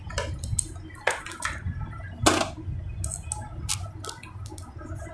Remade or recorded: recorded